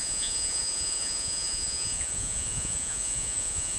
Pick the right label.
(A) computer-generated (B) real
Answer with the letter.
A